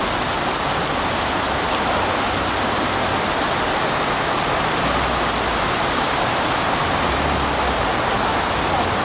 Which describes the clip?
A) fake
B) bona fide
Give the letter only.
B